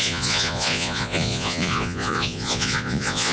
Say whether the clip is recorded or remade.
remade